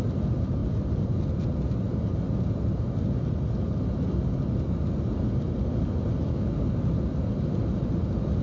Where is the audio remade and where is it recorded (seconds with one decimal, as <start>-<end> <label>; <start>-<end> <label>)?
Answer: 0.0-6.3 recorded; 6.3-6.8 remade; 6.8-8.4 recorded